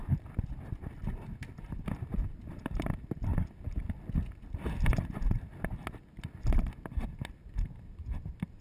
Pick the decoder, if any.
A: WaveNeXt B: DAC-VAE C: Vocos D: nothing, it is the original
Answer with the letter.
D